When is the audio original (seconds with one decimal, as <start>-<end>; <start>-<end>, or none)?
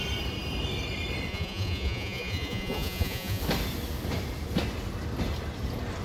0.0-1.3; 3.4-6.0